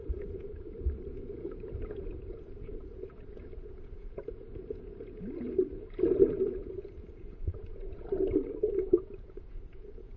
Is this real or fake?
fake